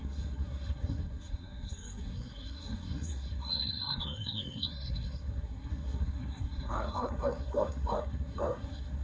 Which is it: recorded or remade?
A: remade